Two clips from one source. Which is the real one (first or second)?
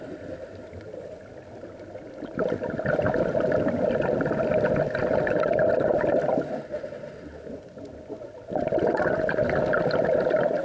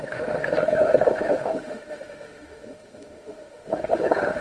first